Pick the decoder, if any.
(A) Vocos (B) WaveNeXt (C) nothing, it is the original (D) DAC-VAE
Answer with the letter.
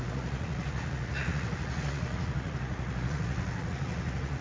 A